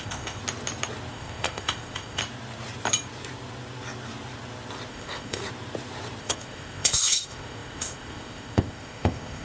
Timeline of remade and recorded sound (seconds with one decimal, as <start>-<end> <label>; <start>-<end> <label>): 0.0-0.4 remade; 0.4-1.1 recorded; 1.1-2.2 remade; 2.2-4.9 recorded; 4.9-5.4 remade; 5.4-6.2 recorded; 6.2-9.4 remade